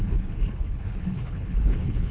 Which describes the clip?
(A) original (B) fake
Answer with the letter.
B